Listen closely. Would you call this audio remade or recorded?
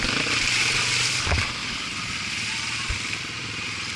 recorded